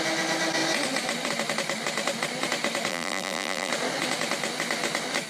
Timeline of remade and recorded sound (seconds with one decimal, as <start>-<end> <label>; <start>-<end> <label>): 0.0-2.9 recorded; 2.9-3.7 remade; 3.7-5.3 recorded